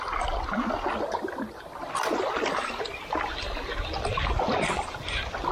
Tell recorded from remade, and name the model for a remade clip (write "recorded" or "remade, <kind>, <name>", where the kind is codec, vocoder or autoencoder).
recorded